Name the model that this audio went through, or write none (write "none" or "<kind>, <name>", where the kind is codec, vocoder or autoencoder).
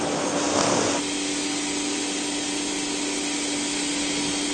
none